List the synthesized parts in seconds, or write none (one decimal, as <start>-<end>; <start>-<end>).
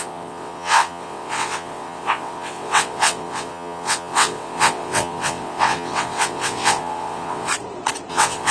0.0-7.5; 8.1-8.5